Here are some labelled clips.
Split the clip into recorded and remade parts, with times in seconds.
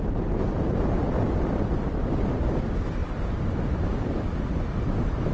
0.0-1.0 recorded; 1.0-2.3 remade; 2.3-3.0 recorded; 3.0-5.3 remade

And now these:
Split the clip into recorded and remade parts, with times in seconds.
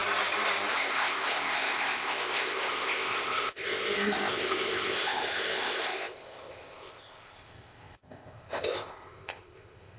0.0-0.7 recorded; 0.7-10.0 remade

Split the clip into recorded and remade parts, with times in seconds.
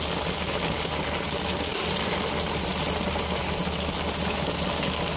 0.0-1.7 recorded; 1.7-2.3 remade; 2.3-5.2 recorded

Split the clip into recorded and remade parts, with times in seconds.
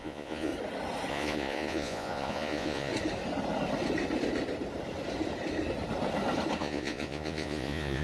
0.0-0.5 remade; 0.5-1.1 recorded; 1.1-2.9 remade; 2.9-6.6 recorded; 6.6-8.0 remade